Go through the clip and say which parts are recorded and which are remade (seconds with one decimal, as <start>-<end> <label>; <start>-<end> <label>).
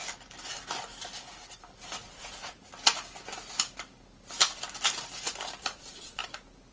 0.0-2.1 recorded; 2.1-2.7 remade; 2.7-5.6 recorded; 5.6-6.2 remade; 6.2-6.7 recorded